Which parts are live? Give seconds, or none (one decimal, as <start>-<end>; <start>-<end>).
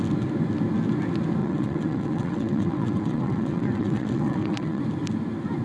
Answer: 0.0-1.4; 4.8-5.6